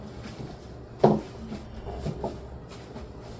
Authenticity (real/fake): real